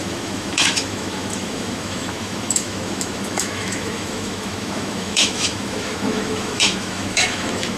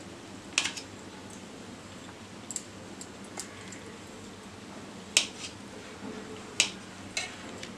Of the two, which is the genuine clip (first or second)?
second